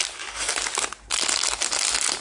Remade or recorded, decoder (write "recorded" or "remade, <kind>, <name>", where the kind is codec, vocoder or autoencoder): recorded